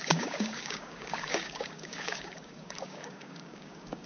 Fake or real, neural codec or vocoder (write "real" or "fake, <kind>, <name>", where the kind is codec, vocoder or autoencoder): fake, codec, DAC